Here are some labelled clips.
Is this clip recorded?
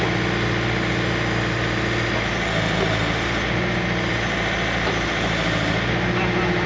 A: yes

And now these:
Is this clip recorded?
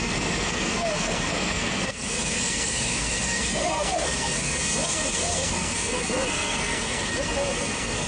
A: no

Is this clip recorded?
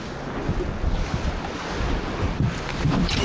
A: yes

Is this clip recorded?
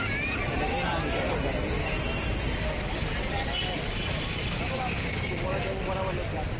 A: yes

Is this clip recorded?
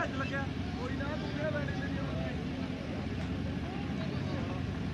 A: yes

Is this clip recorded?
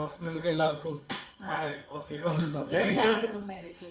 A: no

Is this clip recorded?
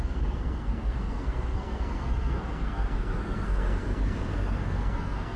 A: no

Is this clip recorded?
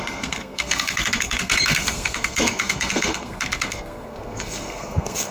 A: no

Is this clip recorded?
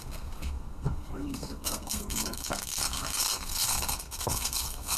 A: no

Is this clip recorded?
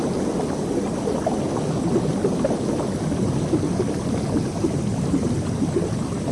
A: yes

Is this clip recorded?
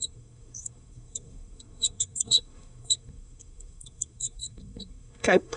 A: no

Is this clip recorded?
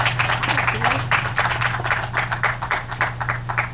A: yes